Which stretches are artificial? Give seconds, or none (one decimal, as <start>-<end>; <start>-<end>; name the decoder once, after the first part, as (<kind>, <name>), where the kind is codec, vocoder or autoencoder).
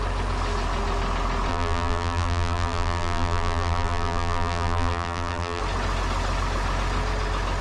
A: 1.5-5.6 (vocoder, BigVGAN v2)